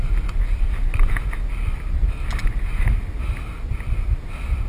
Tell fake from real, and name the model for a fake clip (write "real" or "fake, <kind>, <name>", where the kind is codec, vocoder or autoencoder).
real